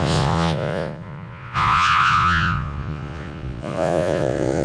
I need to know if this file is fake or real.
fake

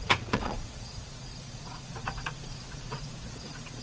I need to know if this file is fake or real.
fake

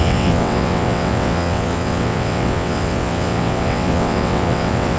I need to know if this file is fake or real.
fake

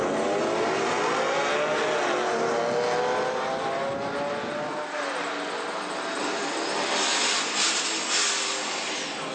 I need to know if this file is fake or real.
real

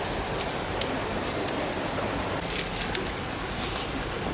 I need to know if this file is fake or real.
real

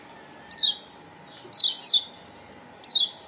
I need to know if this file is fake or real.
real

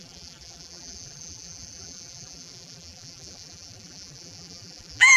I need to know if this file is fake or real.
fake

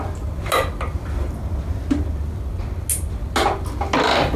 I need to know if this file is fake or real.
real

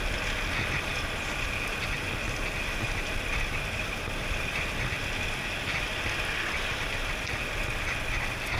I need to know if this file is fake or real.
real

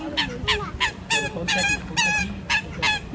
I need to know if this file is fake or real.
real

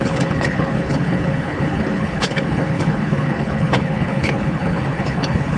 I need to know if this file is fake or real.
fake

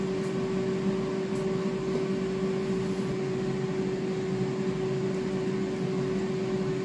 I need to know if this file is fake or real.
real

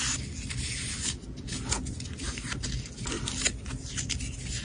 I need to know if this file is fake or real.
real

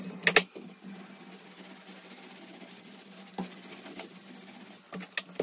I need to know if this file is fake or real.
real